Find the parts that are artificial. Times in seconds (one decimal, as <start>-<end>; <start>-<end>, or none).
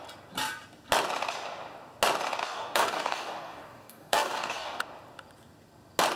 2.4-4.8